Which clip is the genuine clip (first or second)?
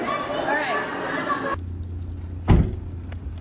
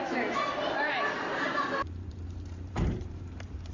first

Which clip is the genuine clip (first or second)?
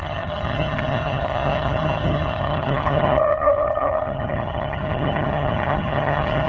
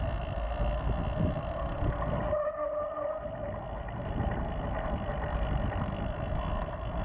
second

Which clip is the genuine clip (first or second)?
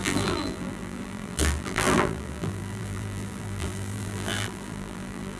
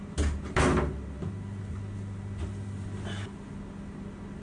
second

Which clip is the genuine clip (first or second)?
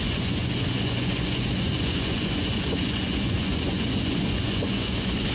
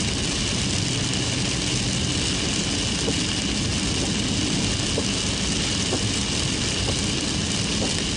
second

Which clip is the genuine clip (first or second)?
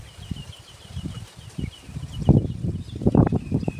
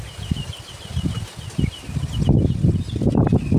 second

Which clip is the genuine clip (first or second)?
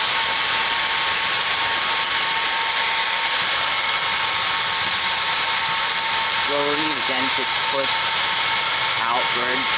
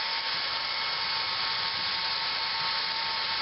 second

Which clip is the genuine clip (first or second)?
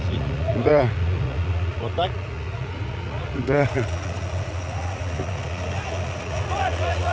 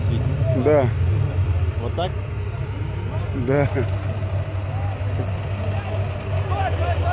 second